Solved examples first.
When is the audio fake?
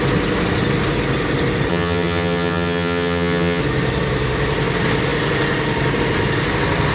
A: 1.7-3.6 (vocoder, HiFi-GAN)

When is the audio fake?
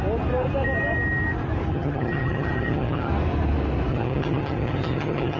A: 1.7-3.1 (vocoder, HiFi-GAN); 3.9-5.4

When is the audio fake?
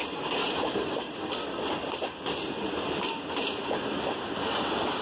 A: none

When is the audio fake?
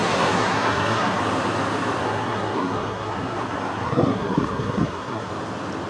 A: 0.0-1.2 (codec, SNAC); 2.0-5.3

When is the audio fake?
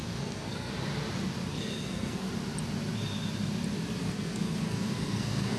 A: 0.0-0.7 (codec, SNAC); 1.5-2.3; 4.0-5.6